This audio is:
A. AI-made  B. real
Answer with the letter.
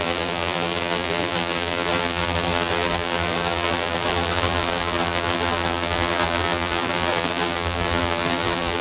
A